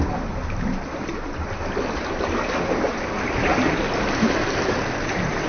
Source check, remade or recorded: recorded